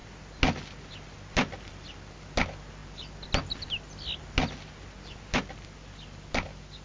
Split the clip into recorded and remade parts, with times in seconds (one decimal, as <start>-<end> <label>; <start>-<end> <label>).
0.0-6.8 recorded